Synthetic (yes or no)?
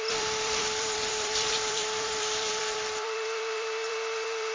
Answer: yes